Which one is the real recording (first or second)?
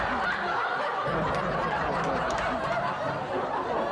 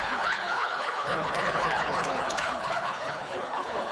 first